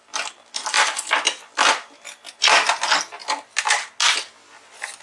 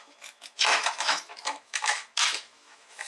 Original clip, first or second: first